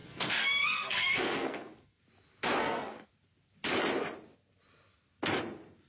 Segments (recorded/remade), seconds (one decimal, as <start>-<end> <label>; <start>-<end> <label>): 0.0-2.0 remade; 2.0-2.6 recorded; 2.6-3.1 remade; 3.1-5.9 recorded